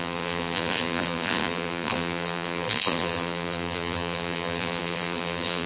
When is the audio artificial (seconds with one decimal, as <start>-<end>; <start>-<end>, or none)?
0.0-5.7